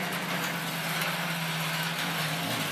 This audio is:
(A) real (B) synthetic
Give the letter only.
A